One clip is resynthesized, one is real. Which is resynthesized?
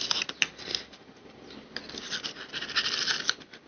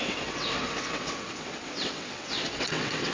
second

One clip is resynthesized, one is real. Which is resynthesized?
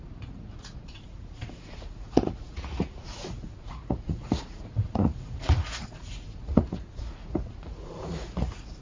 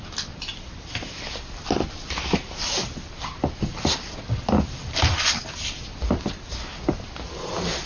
first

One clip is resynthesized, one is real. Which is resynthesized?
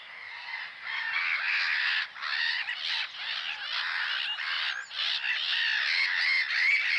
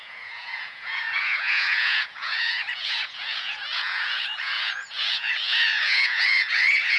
second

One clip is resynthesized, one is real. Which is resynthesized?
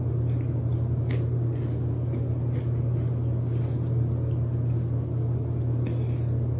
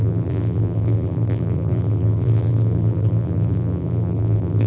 second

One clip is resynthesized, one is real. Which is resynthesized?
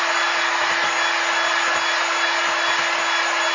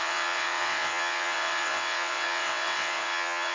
second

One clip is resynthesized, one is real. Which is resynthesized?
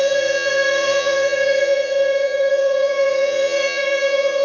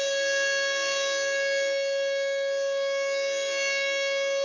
first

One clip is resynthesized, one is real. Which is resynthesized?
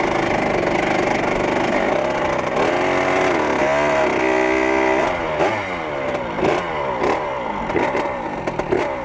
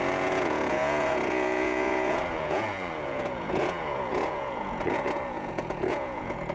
second